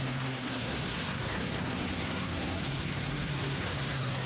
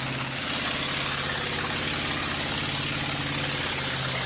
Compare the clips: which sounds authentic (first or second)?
second